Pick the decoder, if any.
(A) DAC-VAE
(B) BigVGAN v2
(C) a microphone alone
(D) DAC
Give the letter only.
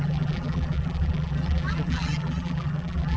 B